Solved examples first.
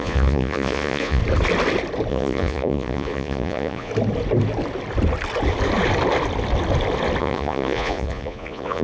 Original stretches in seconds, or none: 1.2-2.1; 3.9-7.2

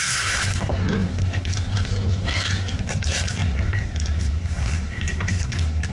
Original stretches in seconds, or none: none